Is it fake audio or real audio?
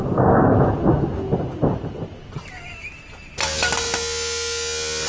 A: real